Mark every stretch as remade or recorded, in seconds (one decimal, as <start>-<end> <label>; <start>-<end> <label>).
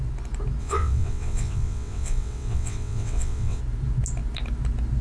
0.0-0.6 recorded; 0.6-3.6 remade; 3.6-5.0 recorded